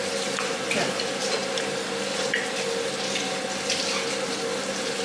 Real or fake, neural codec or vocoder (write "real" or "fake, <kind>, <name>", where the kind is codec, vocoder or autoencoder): real